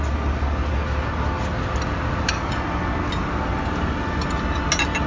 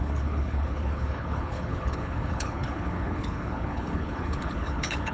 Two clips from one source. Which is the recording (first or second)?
first